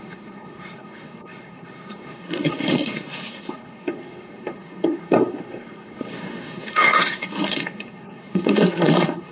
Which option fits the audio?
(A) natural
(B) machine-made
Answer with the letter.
B